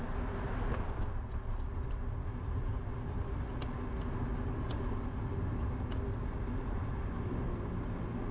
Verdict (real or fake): real